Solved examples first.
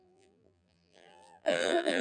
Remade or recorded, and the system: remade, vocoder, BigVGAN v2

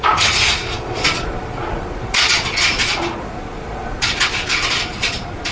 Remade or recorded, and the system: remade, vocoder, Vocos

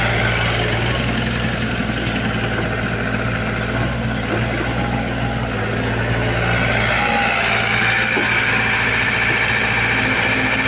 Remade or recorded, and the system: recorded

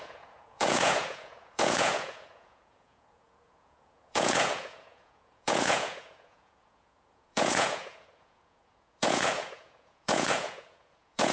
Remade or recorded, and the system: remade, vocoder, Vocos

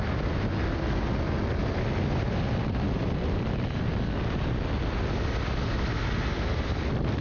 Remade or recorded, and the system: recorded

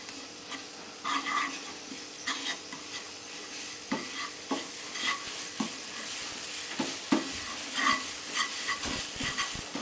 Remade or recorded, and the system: recorded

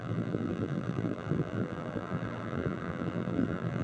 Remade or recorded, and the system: remade, vocoder, BigVGAN v2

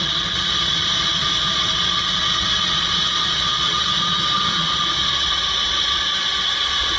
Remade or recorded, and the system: remade, vocoder, Vocos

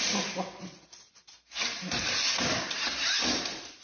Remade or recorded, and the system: recorded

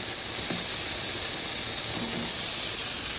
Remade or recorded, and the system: recorded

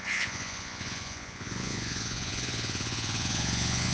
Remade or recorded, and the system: remade, vocoder, Vocos